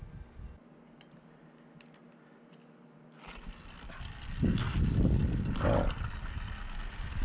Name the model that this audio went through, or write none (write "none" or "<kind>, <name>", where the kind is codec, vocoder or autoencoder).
none